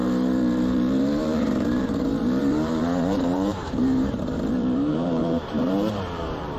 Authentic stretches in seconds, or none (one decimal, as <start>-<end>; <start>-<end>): none

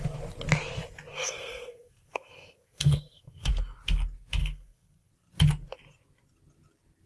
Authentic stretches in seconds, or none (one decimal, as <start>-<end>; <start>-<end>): 0.0-1.1; 3.5-4.4; 5.1-7.1

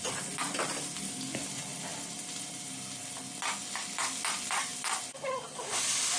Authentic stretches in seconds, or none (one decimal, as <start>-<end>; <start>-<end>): 0.0-6.2

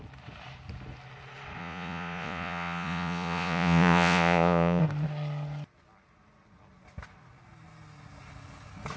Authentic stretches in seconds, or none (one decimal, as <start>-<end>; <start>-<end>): 0.0-1.6; 4.8-9.0

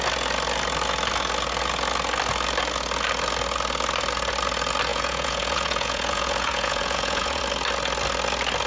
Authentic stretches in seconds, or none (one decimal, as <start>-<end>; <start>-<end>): 0.0-4.9; 7.4-8.7

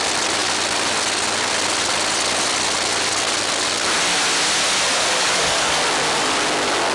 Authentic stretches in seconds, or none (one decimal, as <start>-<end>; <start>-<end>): 0.0-4.9; 5.8-6.9

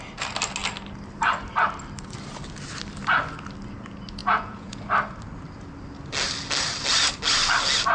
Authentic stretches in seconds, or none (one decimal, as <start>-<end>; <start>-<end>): 0.0-4.2; 4.8-7.9